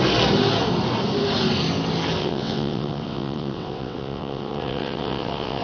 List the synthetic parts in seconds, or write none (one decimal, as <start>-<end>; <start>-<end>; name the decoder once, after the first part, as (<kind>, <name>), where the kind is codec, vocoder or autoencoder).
2.2-5.6 (vocoder, WaveNeXt)